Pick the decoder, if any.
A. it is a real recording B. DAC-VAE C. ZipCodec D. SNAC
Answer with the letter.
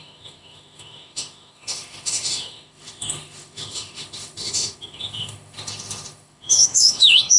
B